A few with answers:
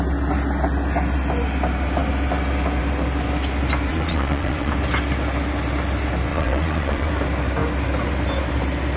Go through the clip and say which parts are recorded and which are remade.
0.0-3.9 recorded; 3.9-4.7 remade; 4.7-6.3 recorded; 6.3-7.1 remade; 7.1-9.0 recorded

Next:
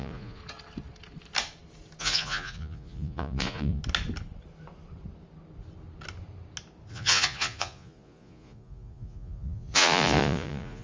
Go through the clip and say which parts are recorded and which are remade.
0.0-0.4 remade; 0.4-2.0 recorded; 2.0-3.8 remade; 3.8-6.9 recorded; 6.9-10.8 remade

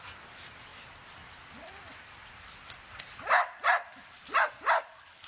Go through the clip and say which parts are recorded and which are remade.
0.0-0.7 recorded; 0.7-3.9 remade; 3.9-5.3 recorded

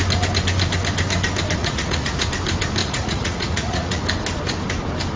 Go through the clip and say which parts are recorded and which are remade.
0.0-1.6 recorded; 1.6-2.3 remade; 2.3-2.8 recorded; 2.8-4.0 remade; 4.0-5.2 recorded

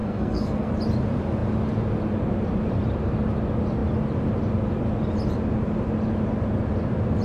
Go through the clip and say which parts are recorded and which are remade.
0.0-0.7 remade; 0.7-7.2 recorded

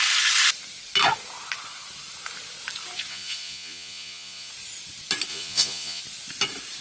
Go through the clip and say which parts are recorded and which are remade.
0.0-3.1 recorded; 3.1-4.5 remade; 4.5-5.3 recorded; 5.3-6.0 remade; 6.0-6.8 recorded

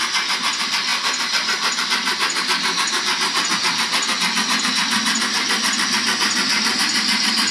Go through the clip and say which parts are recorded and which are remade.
0.0-0.9 remade; 0.9-4.6 recorded; 4.6-7.5 remade